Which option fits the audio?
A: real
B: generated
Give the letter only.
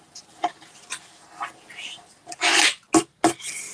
A